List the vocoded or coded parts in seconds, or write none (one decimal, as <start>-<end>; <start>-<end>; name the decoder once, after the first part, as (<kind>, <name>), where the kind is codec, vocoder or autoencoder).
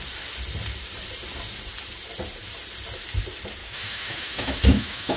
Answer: 3.6-5.2 (autoencoder, DAC-VAE)